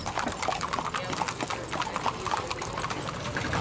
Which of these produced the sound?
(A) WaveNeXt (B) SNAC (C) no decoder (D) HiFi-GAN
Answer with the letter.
C